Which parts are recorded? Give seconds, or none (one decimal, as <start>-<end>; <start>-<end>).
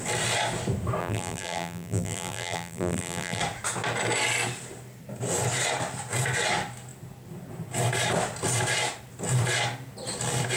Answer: 0.0-1.0; 3.4-10.6